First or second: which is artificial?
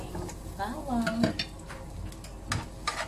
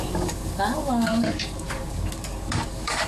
second